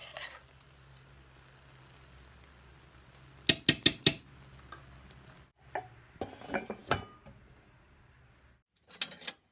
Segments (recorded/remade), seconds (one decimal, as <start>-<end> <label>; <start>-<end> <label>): 0.0-9.5 recorded